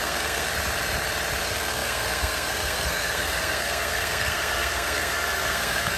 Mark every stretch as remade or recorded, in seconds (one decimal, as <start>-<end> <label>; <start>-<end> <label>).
0.0-0.5 remade; 0.5-1.4 recorded; 1.4-6.0 remade